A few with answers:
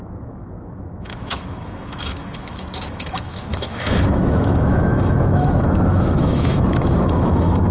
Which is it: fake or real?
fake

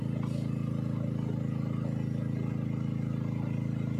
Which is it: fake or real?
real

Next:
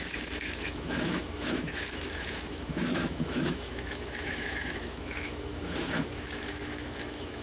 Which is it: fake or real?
fake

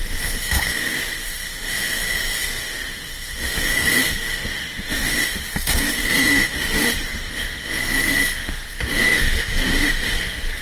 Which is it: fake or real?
fake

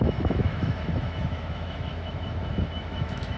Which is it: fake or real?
fake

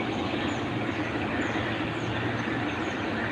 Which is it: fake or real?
real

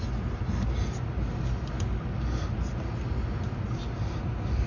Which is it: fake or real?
real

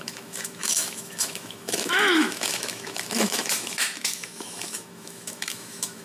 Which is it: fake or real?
fake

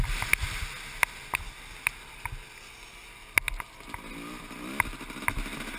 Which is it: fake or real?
real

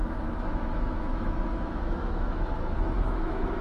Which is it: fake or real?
fake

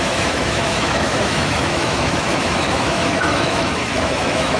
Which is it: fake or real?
fake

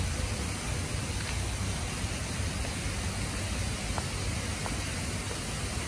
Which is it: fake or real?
real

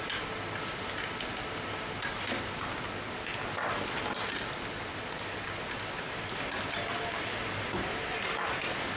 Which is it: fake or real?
real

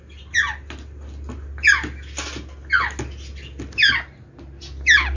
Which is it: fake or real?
real